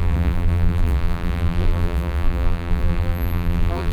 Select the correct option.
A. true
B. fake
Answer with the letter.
B